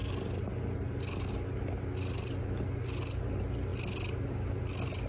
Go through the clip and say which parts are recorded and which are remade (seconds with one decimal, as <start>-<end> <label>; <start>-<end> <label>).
0.0-5.1 recorded